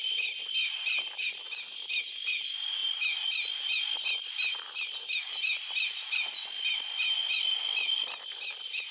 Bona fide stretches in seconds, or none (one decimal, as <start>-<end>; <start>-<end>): 0.0-8.9